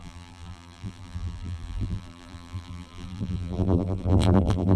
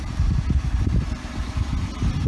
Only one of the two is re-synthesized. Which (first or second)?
first